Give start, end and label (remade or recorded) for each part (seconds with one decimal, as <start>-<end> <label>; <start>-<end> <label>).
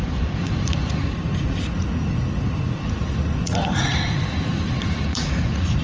0.0-5.8 remade